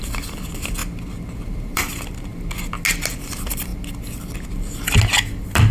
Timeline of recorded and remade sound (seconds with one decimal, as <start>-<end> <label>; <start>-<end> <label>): 0.0-0.8 remade; 0.8-1.7 recorded; 1.7-2.3 remade; 2.3-3.2 recorded; 3.2-3.7 remade; 3.7-5.7 recorded